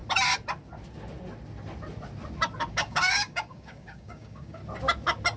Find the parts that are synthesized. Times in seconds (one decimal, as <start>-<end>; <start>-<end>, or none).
2.7-4.6